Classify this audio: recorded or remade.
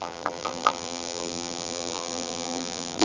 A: remade